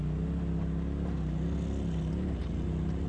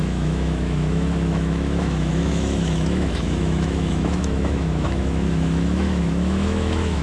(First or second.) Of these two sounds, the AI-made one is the second